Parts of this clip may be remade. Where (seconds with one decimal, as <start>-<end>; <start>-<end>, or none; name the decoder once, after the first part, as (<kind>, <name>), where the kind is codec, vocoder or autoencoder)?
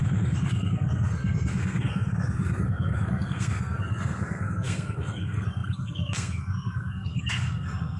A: 0.0-8.0 (codec, SNAC)